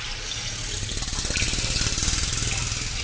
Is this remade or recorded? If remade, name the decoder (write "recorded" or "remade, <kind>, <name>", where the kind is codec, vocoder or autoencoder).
recorded